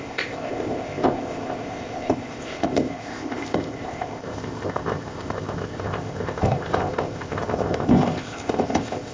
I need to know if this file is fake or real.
fake